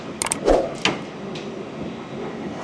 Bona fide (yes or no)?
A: yes